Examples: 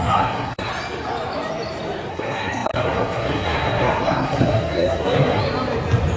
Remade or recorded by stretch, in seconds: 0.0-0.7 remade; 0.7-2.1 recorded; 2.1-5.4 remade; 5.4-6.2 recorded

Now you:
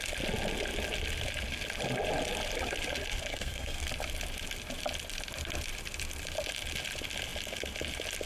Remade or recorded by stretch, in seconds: 0.0-3.3 recorded; 3.3-3.9 remade; 3.9-8.3 recorded

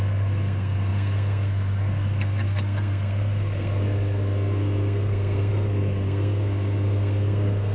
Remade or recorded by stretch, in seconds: 0.0-7.7 remade

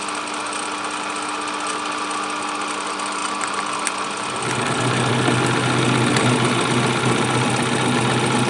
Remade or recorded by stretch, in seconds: 0.0-8.5 recorded